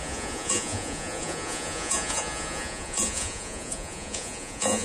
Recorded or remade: remade